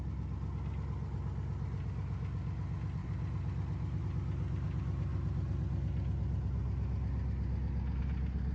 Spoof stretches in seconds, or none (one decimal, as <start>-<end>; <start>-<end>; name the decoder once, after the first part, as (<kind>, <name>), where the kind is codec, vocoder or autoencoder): none